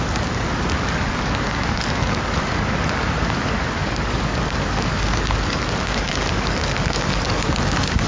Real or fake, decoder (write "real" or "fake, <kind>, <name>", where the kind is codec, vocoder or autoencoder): fake, codec, DAC